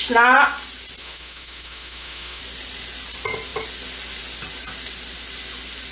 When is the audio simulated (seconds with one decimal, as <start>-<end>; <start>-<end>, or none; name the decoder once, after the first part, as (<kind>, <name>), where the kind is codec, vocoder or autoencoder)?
1.0-2.4 (autoencoder, DAC-VAE)